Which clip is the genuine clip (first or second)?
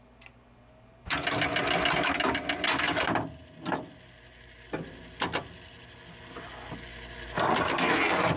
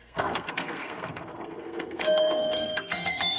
first